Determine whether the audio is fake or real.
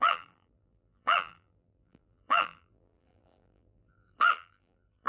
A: fake